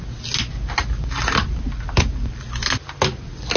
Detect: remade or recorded recorded